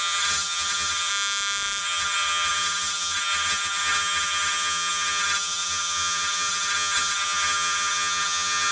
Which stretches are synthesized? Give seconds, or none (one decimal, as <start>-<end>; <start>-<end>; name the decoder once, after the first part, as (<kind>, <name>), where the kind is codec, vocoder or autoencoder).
0.0-1.1 (vocoder, HiFi-GAN); 1.8-8.7